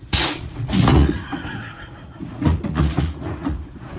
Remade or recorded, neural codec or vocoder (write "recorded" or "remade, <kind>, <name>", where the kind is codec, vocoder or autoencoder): remade, vocoder, Vocos